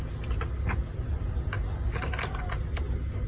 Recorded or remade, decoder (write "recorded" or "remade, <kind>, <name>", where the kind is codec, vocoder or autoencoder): recorded